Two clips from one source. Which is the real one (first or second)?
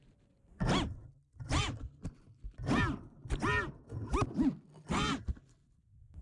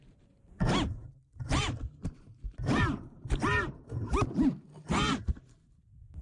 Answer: first